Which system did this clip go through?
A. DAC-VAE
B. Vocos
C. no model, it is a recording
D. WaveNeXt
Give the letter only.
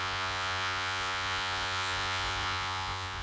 B